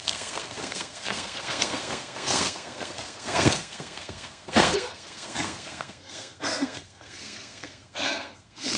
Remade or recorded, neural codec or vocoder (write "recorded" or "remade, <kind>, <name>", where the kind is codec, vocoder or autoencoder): remade, codec, SNAC